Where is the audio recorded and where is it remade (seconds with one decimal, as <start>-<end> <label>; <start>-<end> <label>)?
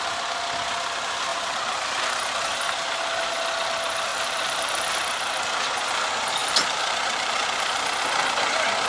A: 0.0-1.3 recorded; 1.3-2.0 remade; 2.0-4.1 recorded; 4.1-4.9 remade; 4.9-6.4 recorded; 6.4-8.0 remade; 8.0-8.9 recorded